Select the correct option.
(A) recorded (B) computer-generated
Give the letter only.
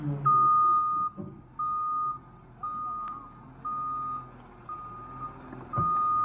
A